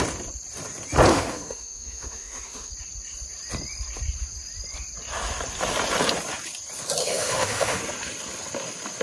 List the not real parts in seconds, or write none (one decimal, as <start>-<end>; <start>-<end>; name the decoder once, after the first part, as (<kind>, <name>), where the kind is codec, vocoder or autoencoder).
1.1-2.7 (autoencoder, DAC-VAE); 7.0-7.8